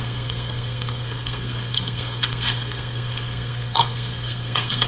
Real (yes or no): no